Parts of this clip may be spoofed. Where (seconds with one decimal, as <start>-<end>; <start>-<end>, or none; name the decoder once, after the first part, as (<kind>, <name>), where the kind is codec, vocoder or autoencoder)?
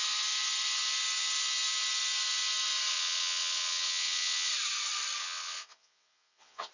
2.9-4.5 (vocoder, WaveNeXt); 5.2-6.7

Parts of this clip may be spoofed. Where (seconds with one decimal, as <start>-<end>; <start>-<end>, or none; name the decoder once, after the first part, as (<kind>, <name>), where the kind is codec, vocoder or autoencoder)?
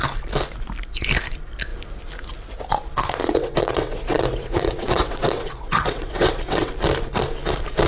3.2-6.7 (vocoder, WaveNeXt)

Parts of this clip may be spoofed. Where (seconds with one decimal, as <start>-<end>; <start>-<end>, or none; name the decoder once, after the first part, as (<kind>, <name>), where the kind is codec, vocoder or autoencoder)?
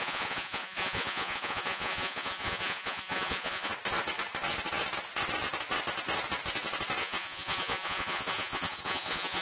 0.0-3.7 (vocoder, Vocos); 7.0-9.4